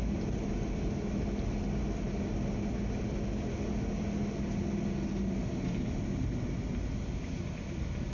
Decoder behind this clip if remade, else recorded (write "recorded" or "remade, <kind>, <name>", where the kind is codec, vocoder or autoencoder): recorded